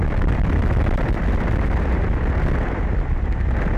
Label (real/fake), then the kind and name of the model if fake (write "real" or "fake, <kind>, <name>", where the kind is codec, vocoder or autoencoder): real